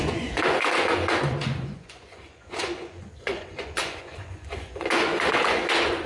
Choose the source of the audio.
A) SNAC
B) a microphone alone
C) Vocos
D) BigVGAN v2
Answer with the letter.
C